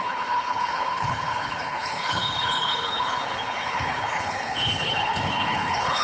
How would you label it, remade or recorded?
remade